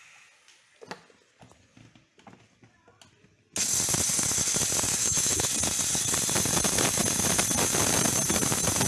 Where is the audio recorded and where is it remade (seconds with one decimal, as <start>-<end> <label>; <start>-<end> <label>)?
0.0-5.0 recorded; 5.0-5.5 remade; 5.5-8.9 recorded